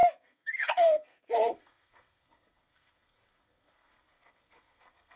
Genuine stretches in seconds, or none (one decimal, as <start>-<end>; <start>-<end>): none